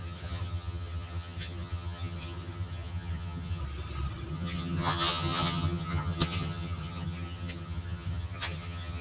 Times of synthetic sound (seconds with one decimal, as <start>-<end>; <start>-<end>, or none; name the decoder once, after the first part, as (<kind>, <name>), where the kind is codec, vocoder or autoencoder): 0.0-3.6 (vocoder, HiFi-GAN); 4.3-9.0

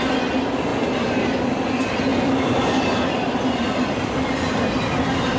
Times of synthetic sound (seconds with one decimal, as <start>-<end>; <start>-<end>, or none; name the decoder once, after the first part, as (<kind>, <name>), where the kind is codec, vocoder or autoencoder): 0.7-1.4 (vocoder, BigVGAN v2); 2.1-4.2

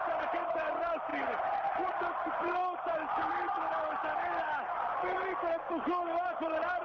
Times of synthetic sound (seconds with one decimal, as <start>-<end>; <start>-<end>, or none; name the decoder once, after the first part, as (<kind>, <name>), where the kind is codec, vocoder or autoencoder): none

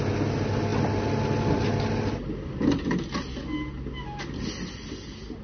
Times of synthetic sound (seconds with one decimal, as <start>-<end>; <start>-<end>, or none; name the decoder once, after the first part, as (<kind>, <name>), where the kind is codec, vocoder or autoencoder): none

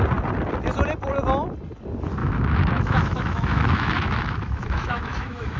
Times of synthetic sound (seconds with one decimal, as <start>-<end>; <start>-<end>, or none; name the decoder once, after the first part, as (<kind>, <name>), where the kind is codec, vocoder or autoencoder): 2.2-5.6 (autoencoder, DAC-VAE)